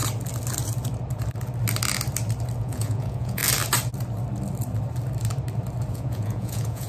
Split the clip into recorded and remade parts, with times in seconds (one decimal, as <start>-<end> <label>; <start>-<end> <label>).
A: 0.0-2.6 recorded; 2.6-3.4 remade; 3.4-5.9 recorded; 5.9-6.9 remade